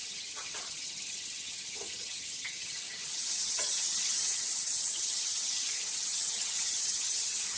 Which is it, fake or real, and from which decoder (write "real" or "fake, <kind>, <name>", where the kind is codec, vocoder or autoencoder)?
fake, vocoder, HiFi-GAN